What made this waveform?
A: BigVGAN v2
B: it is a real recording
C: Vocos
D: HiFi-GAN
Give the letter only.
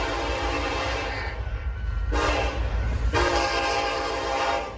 A